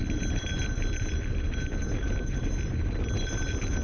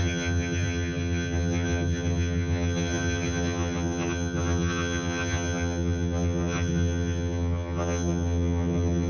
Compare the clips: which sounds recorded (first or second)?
first